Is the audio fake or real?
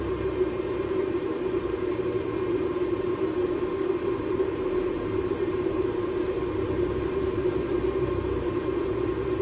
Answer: fake